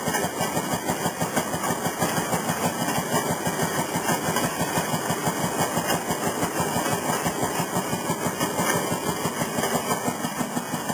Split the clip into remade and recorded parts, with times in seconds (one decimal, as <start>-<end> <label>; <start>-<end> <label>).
0.0-10.9 recorded